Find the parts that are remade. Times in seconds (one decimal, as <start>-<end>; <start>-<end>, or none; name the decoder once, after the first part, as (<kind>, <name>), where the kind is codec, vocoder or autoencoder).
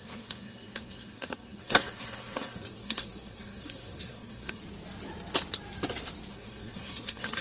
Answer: 0.0-4.6 (codec, SNAC); 6.3-7.4